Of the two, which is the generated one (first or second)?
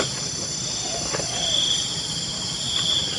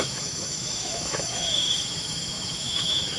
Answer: second